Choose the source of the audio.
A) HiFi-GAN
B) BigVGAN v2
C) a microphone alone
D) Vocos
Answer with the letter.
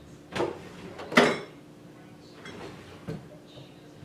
C